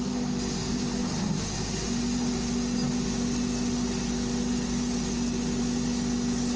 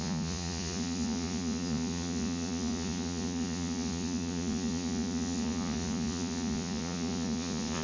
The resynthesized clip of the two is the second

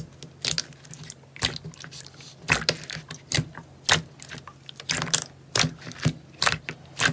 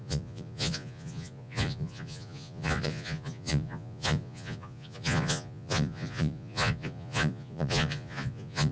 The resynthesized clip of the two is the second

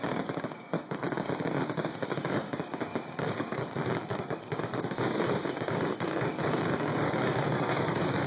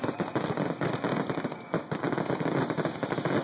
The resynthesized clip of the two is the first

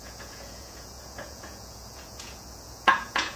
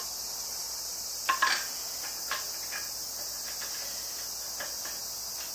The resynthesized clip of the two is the first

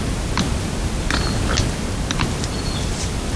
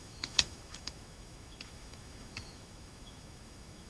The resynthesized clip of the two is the second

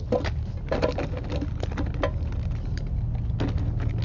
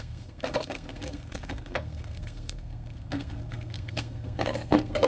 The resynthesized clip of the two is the second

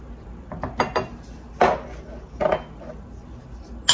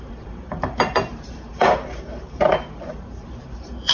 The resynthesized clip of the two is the second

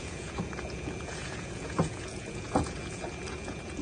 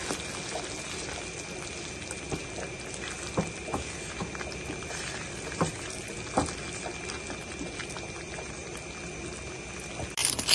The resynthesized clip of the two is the first